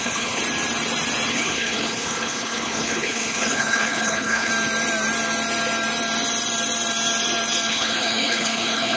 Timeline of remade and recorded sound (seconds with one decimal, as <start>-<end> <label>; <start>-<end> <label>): 0.0-0.4 remade; 0.4-1.3 recorded; 1.3-4.5 remade; 4.5-7.7 recorded; 7.7-9.0 remade